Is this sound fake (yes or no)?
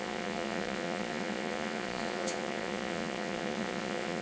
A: yes